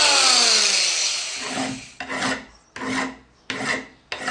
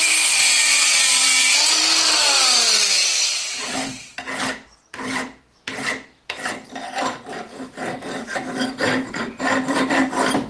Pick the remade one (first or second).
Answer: second